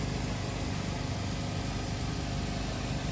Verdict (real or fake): real